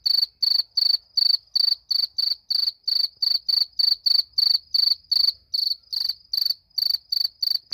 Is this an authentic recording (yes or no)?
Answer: yes